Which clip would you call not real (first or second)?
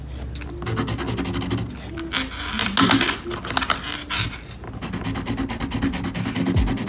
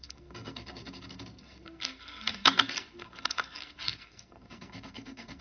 second